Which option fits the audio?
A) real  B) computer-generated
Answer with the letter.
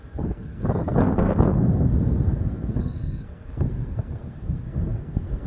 B